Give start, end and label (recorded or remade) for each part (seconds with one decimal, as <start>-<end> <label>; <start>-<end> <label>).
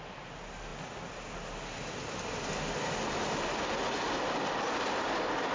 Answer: 0.0-5.5 recorded